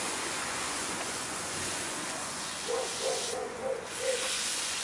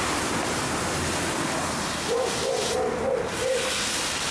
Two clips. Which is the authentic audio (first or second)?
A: second